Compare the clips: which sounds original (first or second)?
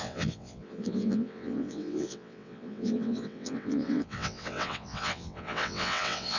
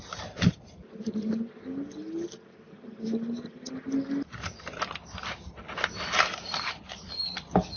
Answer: second